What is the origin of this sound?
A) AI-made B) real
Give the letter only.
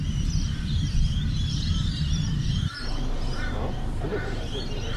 A